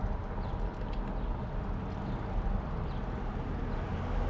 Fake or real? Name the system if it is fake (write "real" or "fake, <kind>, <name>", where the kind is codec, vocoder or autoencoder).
real